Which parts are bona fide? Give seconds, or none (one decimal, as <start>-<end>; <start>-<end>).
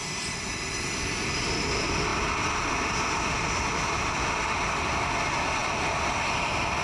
0.0-6.8